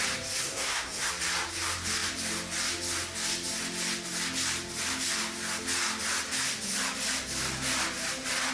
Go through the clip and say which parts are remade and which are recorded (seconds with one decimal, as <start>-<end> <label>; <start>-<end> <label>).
0.0-0.4 recorded; 0.4-1.1 remade; 1.1-8.5 recorded